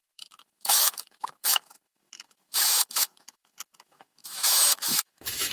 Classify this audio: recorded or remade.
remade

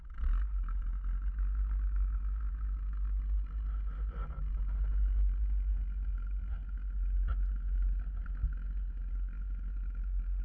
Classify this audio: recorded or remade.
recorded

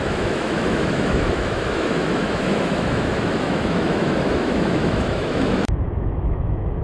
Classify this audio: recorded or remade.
remade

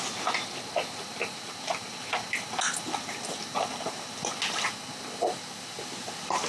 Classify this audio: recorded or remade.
recorded